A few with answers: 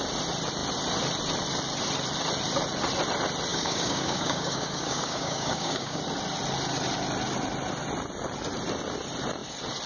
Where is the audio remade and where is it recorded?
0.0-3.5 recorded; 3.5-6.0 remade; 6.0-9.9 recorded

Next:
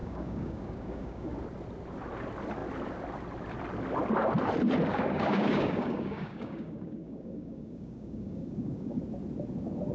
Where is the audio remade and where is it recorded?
0.0-1.3 remade; 1.3-4.9 recorded; 4.9-9.0 remade; 9.0-9.9 recorded